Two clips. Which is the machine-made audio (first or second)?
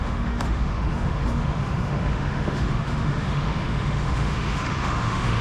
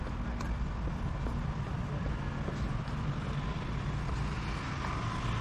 first